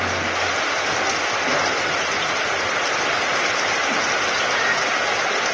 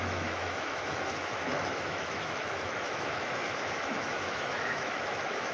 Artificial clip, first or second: second